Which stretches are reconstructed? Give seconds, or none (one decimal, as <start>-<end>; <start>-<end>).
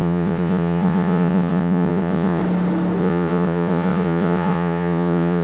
0.0-2.4; 3.0-5.4